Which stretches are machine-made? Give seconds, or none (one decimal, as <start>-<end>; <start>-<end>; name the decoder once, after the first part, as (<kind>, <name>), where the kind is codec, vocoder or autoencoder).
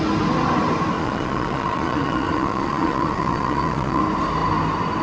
1.0-4.0 (vocoder, Vocos)